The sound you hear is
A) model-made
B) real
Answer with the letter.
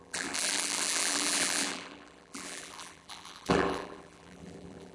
A